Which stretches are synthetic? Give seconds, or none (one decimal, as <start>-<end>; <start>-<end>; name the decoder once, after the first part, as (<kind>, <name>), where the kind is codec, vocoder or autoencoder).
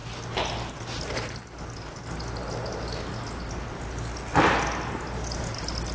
none